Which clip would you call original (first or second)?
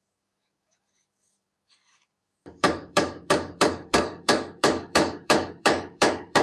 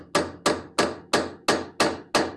second